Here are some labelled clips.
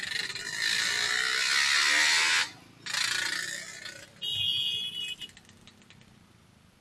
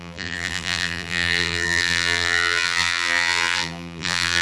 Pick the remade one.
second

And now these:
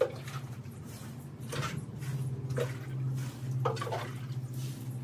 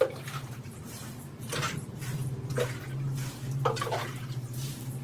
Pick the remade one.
second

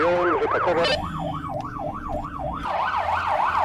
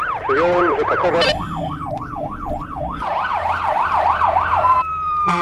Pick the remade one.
second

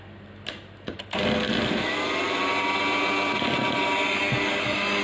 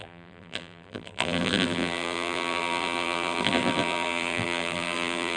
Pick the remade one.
second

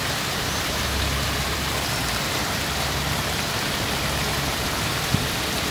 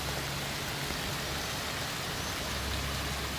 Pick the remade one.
first